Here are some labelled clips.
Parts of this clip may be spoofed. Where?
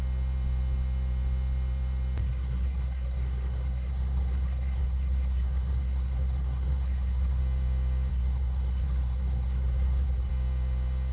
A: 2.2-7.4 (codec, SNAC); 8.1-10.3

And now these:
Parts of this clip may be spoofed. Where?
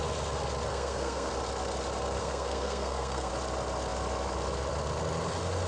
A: 0.7-1.3 (codec, SNAC); 2.2-3.3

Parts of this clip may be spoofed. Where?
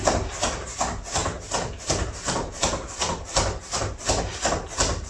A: none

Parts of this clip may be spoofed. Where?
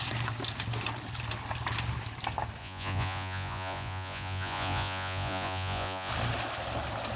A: 2.6-6.1 (vocoder, Vocos)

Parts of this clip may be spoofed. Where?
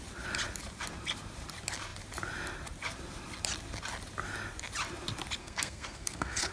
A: 5.4-6.5 (codec, SNAC)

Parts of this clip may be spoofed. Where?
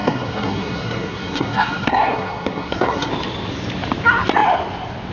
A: 0.0-3.1 (codec, SNAC)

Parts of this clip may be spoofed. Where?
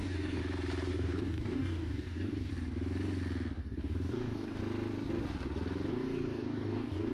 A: 0.0-0.4 (codec, DAC); 0.9-2.5; 3.6-4.6; 5.9-7.1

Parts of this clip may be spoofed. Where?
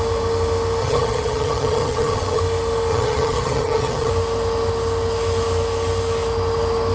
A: 0.8-2.4 (vocoder, HiFi-GAN); 2.9-4.1